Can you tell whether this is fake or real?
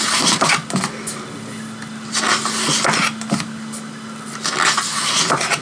real